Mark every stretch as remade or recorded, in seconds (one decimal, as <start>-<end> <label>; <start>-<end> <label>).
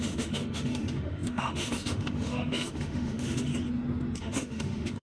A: 0.0-3.5 remade; 3.5-4.2 recorded; 4.2-5.0 remade